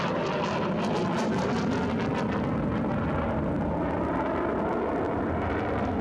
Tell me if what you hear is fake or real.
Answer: real